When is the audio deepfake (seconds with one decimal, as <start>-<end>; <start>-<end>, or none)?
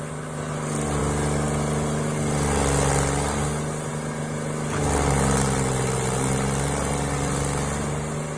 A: none